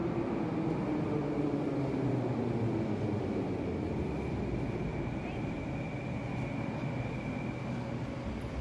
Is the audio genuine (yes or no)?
yes